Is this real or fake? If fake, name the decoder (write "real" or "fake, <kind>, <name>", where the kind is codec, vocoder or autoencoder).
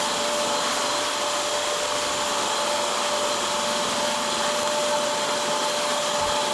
real